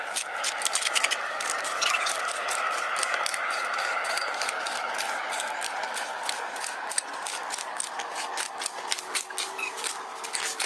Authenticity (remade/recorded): remade